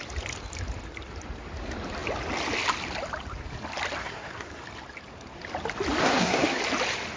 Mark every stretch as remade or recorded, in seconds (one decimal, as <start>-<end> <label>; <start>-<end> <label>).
0.0-4.0 recorded; 4.0-4.6 remade; 4.6-6.0 recorded; 6.0-6.6 remade; 6.6-7.2 recorded